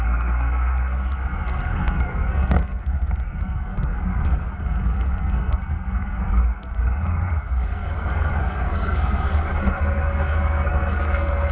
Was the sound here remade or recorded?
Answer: remade